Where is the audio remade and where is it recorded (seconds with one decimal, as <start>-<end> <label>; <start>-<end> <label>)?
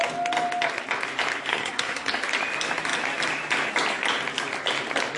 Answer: 0.0-1.5 recorded; 1.5-2.1 remade; 2.1-5.2 recorded